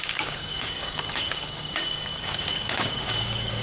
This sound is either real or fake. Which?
fake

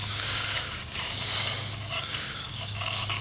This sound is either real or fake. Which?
fake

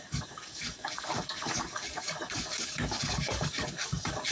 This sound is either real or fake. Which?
fake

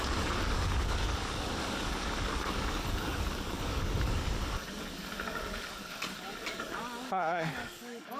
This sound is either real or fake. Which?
fake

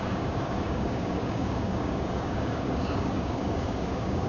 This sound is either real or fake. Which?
fake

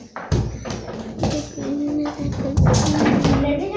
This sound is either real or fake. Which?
real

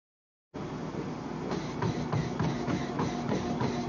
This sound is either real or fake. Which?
real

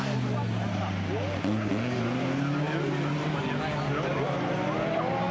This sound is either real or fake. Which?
real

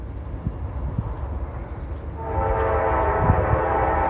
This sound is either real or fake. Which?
real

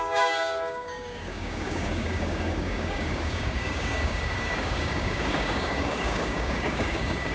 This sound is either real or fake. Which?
fake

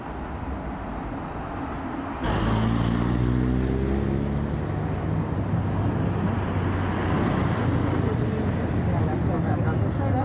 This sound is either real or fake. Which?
real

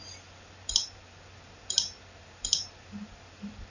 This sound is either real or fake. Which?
real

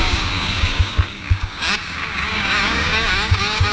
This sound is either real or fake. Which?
fake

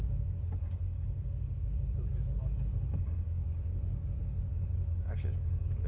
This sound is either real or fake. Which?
fake